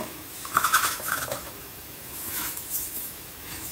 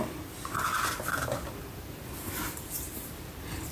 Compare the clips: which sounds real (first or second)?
second